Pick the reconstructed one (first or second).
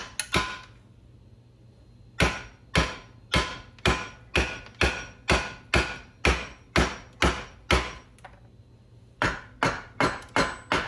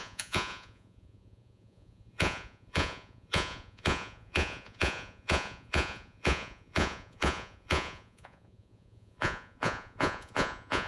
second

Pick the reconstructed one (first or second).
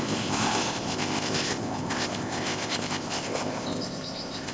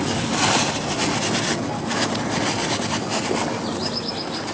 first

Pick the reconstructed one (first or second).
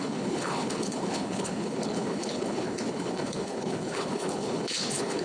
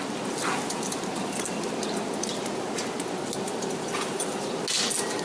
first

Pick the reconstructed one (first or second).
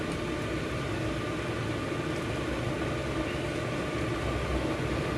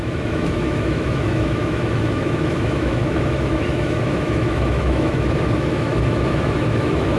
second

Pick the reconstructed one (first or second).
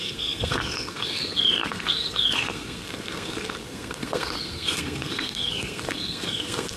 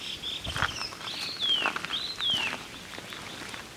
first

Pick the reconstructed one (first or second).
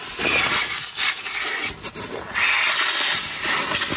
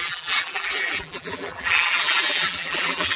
second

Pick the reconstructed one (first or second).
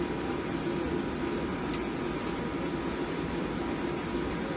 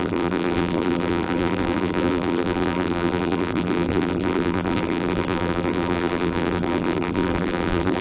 second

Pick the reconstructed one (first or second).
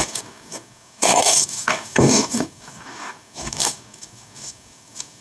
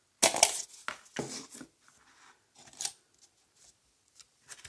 first